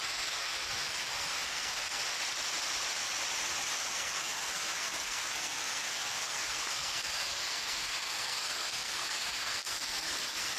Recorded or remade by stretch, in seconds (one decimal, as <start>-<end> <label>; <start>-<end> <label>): 0.0-2.0 remade; 2.0-3.8 recorded; 3.8-10.6 remade